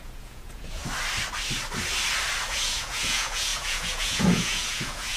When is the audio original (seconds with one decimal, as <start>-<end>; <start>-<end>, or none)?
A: 0.8-2.5